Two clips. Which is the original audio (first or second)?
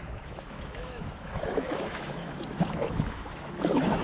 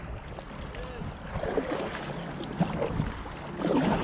second